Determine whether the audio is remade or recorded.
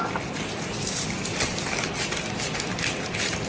recorded